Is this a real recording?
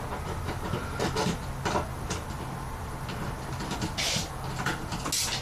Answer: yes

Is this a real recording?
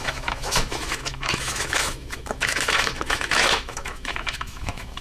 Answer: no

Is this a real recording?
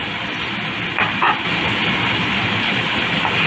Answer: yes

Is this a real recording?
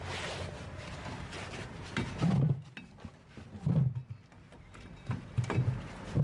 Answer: yes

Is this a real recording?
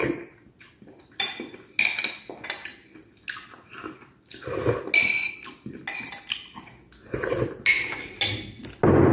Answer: yes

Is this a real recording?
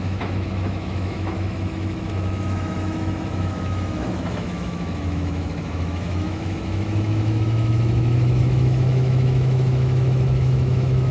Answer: no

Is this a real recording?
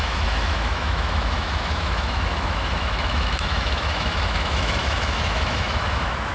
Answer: no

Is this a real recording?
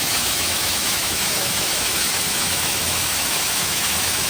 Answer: no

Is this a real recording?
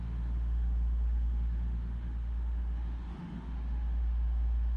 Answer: no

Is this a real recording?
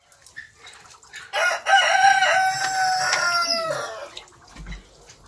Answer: yes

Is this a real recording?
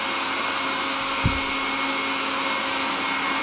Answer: yes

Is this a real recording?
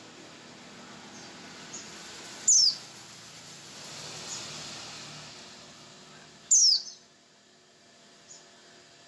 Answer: yes